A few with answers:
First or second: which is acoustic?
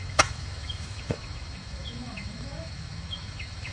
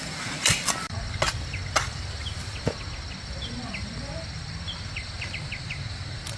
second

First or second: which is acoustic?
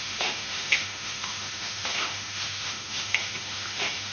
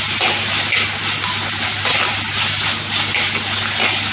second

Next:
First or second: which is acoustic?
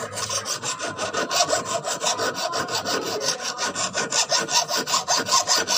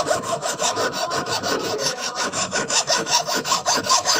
first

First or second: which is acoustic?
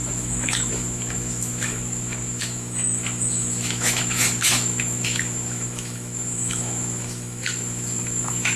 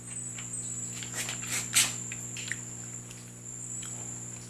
second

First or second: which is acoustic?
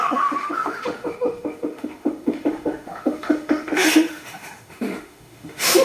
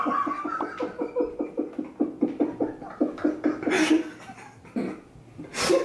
second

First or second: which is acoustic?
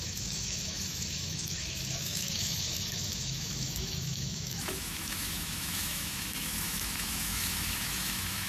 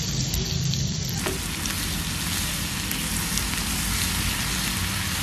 second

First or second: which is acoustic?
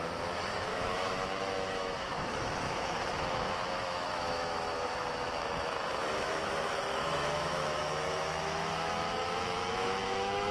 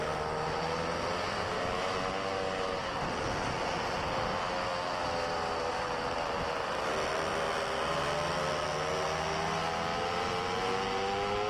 second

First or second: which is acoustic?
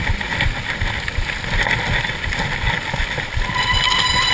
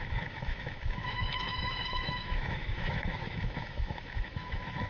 first